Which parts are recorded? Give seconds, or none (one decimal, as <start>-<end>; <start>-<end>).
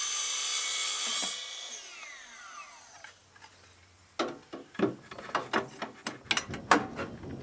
0.0-7.4